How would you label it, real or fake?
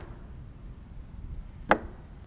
real